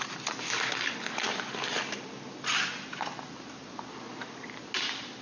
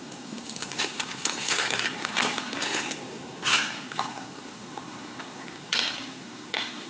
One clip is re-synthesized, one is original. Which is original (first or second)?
first